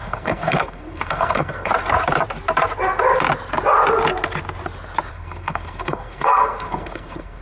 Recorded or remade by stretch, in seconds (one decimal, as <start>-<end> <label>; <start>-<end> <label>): 0.0-1.7 remade; 1.7-5.1 recorded; 5.1-7.4 remade